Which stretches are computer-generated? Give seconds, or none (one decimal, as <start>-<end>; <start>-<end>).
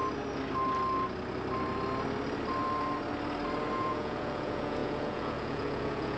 3.7-6.2